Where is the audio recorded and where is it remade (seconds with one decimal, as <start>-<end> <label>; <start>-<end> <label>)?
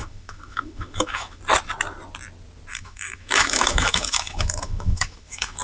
0.0-1.4 remade; 1.4-2.7 recorded; 2.7-5.6 remade